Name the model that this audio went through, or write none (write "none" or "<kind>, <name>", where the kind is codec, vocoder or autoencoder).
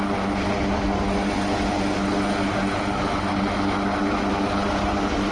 none